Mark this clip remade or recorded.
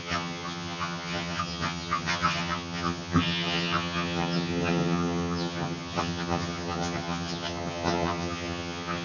remade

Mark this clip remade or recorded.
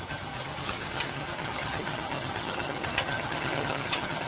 remade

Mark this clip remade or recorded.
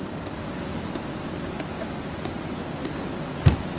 recorded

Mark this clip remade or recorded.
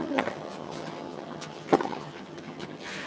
remade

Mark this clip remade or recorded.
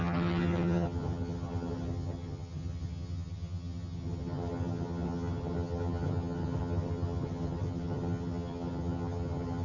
remade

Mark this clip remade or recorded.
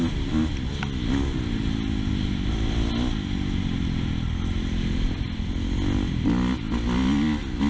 recorded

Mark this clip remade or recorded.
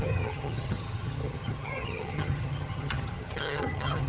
remade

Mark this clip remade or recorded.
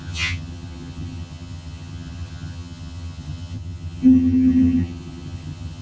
remade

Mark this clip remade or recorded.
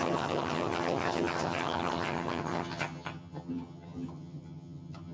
remade